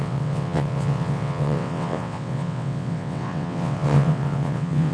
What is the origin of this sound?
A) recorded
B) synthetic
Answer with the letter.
B